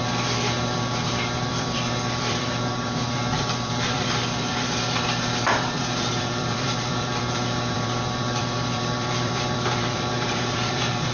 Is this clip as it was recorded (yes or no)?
no